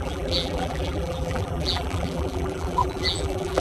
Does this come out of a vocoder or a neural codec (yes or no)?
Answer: yes